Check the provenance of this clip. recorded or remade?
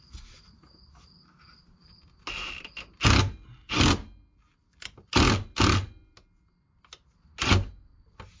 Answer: recorded